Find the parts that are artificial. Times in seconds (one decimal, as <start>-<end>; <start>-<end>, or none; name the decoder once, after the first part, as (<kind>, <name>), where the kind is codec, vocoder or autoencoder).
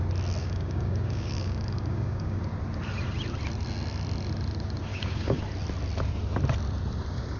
0.4-2.4 (codec, DAC); 4.9-5.4